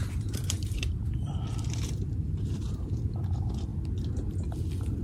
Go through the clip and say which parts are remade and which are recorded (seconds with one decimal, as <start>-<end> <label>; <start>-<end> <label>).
0.0-3.7 remade; 3.7-5.0 recorded